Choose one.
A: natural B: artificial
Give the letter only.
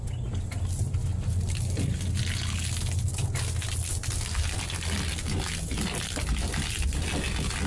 A